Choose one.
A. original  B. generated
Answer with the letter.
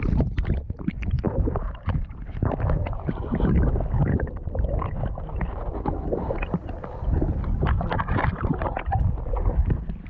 A